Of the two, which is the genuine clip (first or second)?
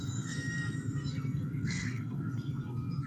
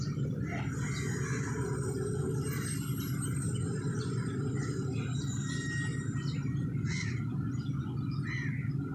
second